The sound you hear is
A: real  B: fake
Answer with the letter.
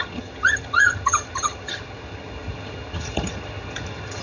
B